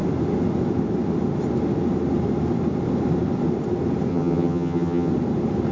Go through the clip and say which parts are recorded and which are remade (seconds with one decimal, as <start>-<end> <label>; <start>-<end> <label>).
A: 0.0-4.1 recorded; 4.1-5.1 remade; 5.1-5.7 recorded